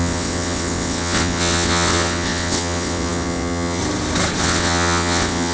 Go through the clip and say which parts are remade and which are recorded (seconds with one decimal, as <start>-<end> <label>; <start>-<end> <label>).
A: 0.0-3.8 remade; 3.8-4.4 recorded; 4.4-5.5 remade